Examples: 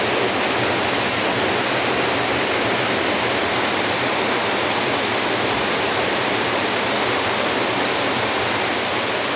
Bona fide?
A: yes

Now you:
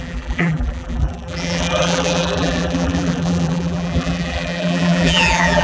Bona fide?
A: no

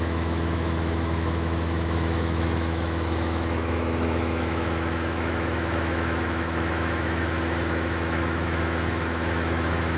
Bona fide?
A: no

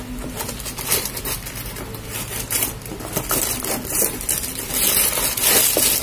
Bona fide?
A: yes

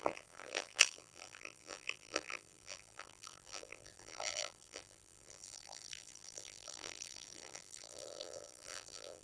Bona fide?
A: no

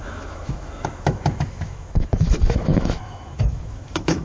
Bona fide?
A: no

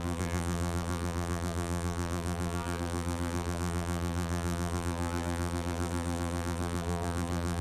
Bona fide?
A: no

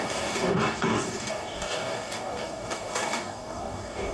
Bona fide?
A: no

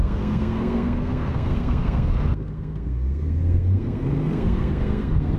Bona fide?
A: no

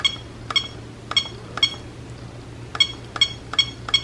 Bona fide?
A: yes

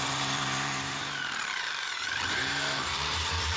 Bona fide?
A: no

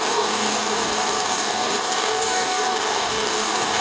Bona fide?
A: no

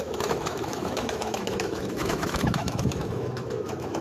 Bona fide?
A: no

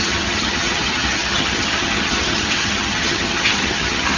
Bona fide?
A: no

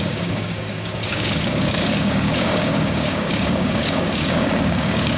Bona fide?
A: no